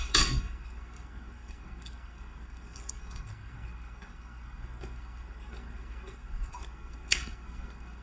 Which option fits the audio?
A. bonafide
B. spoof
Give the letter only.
B